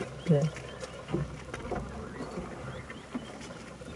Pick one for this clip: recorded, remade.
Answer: recorded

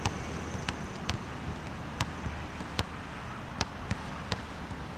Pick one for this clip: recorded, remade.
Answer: recorded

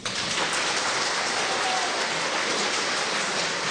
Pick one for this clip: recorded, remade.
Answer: recorded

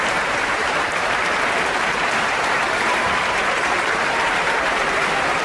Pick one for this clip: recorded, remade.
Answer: remade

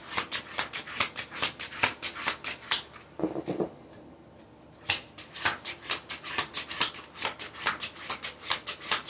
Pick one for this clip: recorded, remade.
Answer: recorded